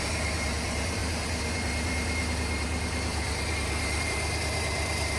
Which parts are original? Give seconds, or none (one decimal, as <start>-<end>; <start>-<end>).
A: none